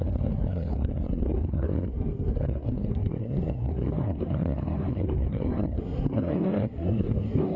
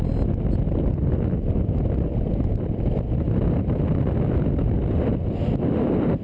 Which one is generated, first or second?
first